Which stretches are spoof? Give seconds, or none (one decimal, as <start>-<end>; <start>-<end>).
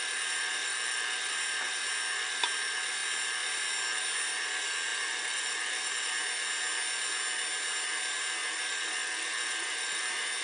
0.7-1.3; 4.9-6.1; 9.0-10.0